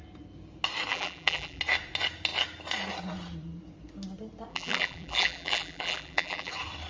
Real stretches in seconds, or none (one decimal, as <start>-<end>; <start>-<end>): 0.0-0.9; 1.6-4.5; 6.5-6.9